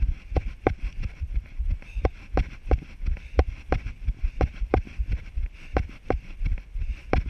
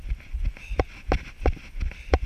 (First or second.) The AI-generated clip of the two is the first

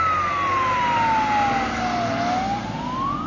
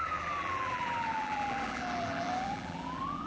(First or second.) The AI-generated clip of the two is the second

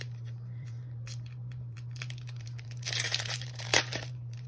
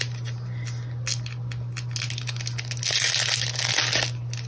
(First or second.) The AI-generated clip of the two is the first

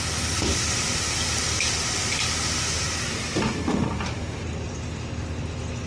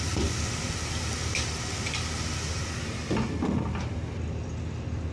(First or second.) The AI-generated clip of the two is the first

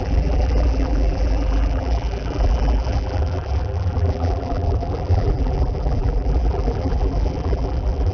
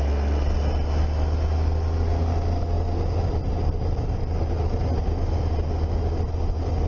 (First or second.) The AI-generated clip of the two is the first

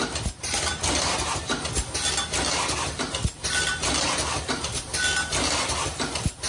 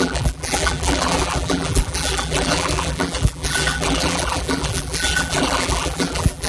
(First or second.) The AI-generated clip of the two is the second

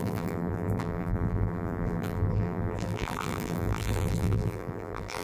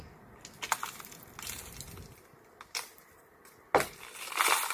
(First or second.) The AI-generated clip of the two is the first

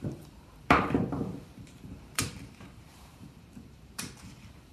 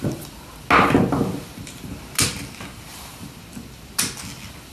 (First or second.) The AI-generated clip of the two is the first